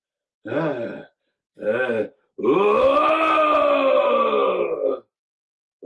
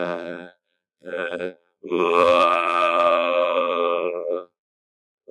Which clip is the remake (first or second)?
second